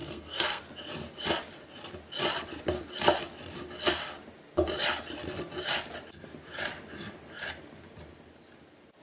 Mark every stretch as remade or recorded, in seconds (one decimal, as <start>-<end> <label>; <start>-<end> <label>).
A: 0.0-0.6 remade; 0.6-9.0 recorded